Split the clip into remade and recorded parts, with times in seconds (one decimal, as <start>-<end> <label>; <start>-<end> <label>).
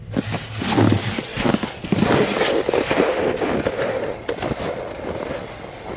0.0-6.0 recorded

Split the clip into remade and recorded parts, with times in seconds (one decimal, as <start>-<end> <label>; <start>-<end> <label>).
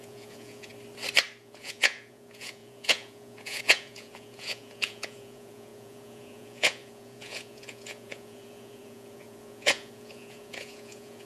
0.0-0.7 remade; 0.7-1.4 recorded; 1.4-11.2 remade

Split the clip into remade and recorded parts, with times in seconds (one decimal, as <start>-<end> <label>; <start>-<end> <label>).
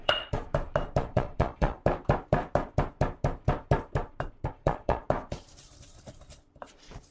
0.0-0.4 remade; 0.4-1.0 recorded; 1.0-1.8 remade; 1.8-4.5 recorded; 4.5-5.0 remade; 5.0-7.1 recorded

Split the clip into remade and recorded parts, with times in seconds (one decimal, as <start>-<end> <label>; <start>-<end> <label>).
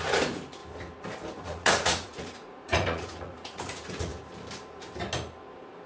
0.0-0.6 remade; 0.6-1.4 recorded; 1.4-4.1 remade; 4.1-5.9 recorded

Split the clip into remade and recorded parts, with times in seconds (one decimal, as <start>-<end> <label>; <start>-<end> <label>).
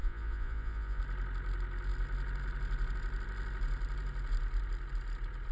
0.0-1.0 remade; 1.0-5.5 recorded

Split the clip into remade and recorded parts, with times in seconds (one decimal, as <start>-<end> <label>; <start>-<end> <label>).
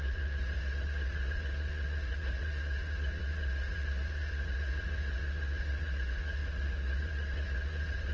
0.0-8.1 remade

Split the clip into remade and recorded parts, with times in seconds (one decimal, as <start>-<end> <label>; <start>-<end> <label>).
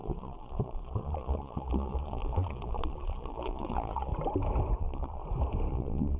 0.0-4.1 remade; 4.1-4.8 recorded; 4.8-5.2 remade; 5.2-5.7 recorded; 5.7-6.2 remade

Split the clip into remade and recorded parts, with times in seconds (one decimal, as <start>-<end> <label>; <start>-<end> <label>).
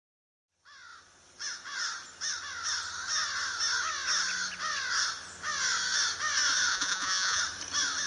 0.0-6.7 recorded; 6.7-7.4 remade; 7.4-8.1 recorded